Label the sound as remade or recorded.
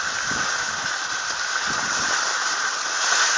recorded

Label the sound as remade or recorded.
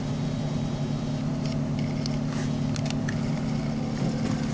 recorded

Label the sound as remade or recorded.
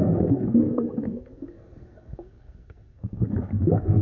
remade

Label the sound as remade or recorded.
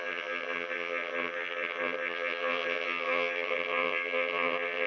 remade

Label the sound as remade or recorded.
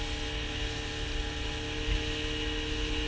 recorded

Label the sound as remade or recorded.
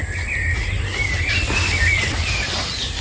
recorded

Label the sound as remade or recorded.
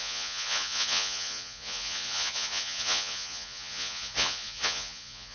remade